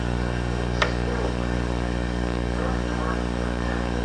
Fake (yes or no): yes